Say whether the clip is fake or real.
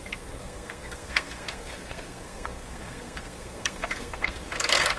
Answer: fake